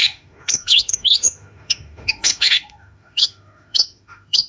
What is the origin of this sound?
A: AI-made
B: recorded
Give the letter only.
A